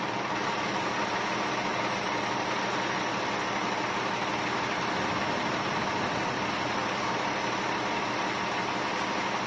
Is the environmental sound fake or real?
real